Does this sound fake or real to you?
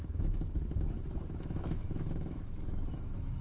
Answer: fake